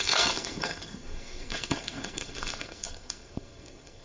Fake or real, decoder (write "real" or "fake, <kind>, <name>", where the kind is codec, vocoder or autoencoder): fake, codec, SNAC